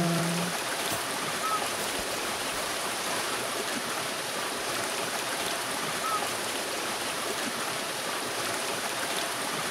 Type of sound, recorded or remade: remade